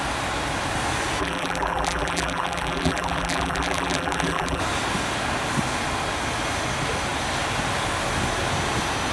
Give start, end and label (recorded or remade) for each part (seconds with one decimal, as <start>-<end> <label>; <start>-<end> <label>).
0.0-1.2 recorded; 1.2-4.6 remade; 4.6-9.1 recorded